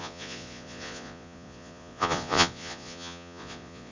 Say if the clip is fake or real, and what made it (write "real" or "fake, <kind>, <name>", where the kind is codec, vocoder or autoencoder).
fake, vocoder, Vocos